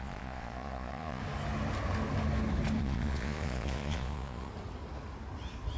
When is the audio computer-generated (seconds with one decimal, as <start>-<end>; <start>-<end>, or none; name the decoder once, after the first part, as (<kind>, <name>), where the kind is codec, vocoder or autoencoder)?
0.0-1.2 (vocoder, Vocos); 2.8-4.5